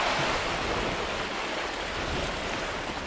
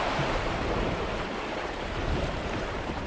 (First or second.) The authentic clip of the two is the first